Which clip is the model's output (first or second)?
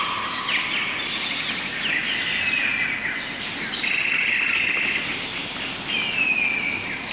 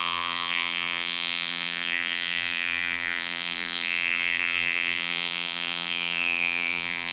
second